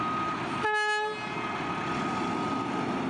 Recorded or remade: recorded